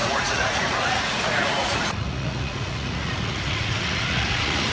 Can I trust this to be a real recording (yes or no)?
no